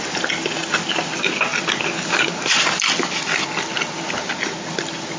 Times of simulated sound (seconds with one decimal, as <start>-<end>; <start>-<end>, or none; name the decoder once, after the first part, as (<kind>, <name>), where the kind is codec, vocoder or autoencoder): none